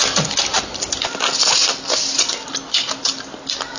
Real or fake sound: real